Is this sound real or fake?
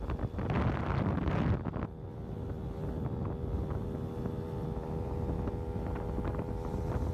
real